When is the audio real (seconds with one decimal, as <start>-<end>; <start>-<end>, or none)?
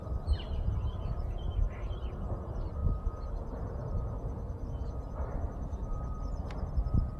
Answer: 2.8-6.7